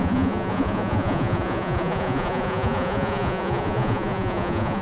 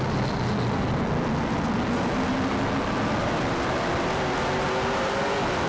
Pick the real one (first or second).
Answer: second